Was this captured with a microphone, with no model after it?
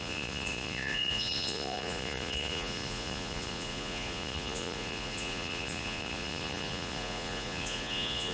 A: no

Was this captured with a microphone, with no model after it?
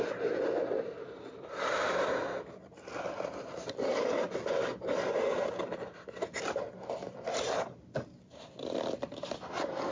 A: yes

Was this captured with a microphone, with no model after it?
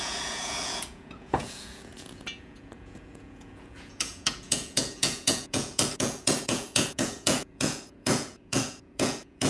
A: no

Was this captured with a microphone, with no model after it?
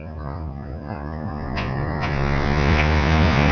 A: no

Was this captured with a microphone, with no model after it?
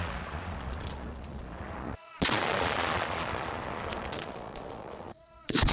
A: no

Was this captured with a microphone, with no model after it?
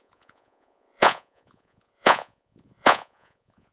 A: no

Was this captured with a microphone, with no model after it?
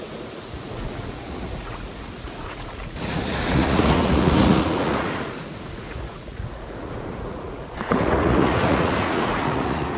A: no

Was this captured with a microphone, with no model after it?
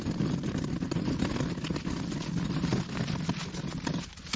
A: yes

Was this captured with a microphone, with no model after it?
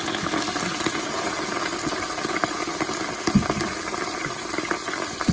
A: yes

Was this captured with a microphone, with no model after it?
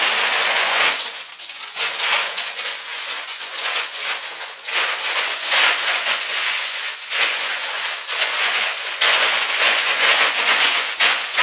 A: no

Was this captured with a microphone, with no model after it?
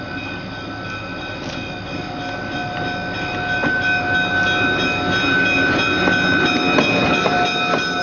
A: yes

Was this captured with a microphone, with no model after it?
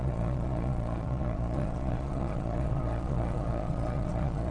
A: no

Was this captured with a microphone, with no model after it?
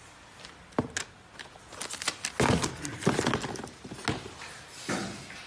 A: yes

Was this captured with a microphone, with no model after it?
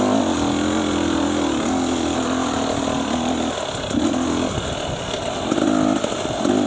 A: yes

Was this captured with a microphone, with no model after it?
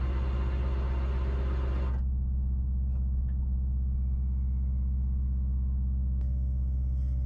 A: yes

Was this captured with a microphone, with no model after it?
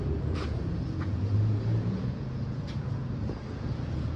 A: no